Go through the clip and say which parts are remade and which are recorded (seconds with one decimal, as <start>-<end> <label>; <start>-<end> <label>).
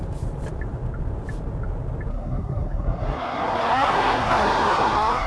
0.0-2.1 recorded; 2.1-5.3 remade